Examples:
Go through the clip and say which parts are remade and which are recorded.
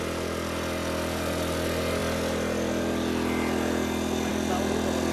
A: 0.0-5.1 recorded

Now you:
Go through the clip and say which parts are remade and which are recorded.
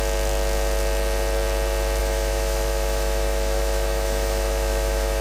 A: 0.0-2.0 recorded; 2.0-5.2 remade